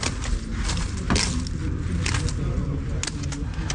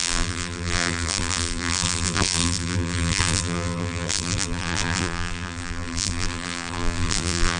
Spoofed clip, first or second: second